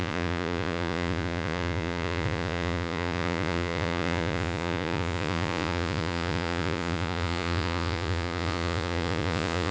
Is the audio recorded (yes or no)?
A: no